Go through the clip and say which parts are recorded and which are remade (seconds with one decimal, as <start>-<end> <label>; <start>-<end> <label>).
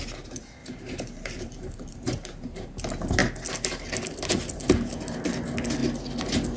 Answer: 0.0-0.6 recorded; 0.6-2.8 remade; 2.8-6.6 recorded